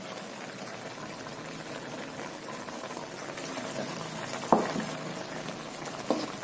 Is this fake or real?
real